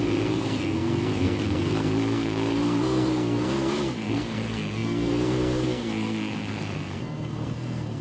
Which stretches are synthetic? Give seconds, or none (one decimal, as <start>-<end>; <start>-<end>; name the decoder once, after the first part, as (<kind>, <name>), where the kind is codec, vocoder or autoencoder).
0.0-8.0 (codec, SNAC)